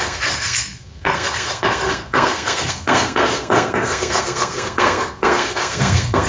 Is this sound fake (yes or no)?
yes